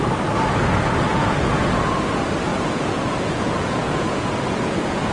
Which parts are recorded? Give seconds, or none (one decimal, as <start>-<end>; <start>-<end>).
0.0-1.1; 1.8-2.5